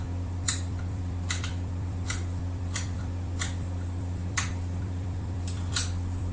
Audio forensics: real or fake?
fake